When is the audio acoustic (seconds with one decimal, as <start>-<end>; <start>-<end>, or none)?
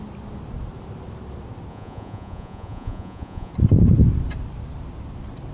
0.0-1.7; 3.5-5.5